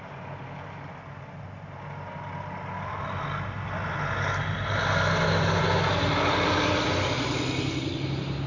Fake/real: real